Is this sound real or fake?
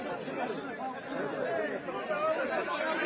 fake